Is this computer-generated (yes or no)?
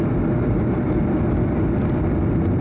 no